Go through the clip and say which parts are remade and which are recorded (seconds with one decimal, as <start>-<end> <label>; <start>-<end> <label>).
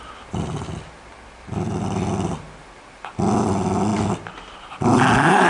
0.0-5.5 recorded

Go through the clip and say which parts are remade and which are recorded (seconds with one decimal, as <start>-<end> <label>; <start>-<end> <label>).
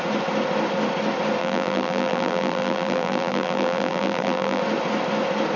0.0-1.4 recorded; 1.4-4.6 remade; 4.6-5.6 recorded